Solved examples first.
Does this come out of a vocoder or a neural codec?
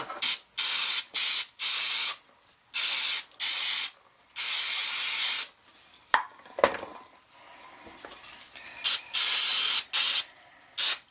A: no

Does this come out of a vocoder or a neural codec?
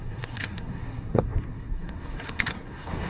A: yes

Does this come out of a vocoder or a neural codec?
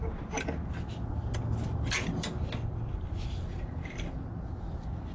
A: no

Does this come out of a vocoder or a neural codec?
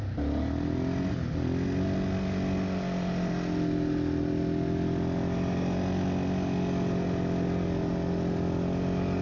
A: no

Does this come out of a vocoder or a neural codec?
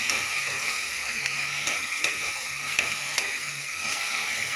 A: yes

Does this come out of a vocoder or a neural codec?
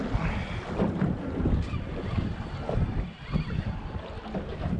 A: no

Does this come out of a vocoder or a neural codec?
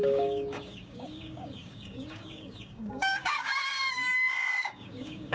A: yes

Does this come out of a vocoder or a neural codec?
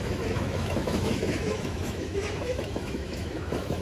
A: yes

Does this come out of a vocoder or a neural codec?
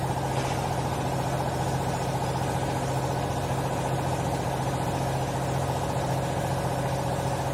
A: no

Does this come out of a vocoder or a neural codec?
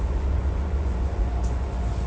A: yes